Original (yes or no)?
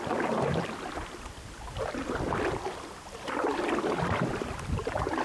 yes